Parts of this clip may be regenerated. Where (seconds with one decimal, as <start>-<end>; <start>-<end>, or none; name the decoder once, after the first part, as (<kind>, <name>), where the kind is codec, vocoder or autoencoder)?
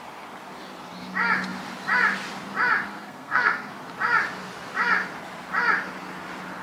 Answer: 2.9-3.7 (codec, SNAC)